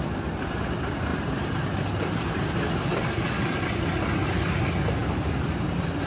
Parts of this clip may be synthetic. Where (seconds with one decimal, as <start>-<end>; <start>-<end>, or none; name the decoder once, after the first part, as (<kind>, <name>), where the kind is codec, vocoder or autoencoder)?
5.0-6.1 (vocoder, BigVGAN v2)